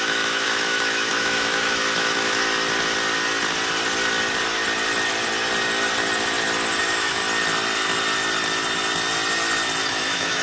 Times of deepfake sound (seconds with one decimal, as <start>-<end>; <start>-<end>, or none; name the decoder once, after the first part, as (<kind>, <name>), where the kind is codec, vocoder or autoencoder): 0.0-2.4 (autoencoder, DAC-VAE); 6.8-7.2; 9.9-10.4